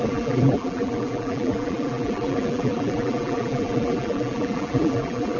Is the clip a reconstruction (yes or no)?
yes